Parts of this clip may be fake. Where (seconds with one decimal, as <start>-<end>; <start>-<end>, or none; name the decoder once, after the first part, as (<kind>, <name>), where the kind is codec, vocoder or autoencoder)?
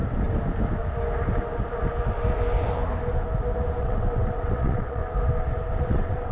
3.8-5.0 (vocoder, WaveNeXt); 5.7-6.3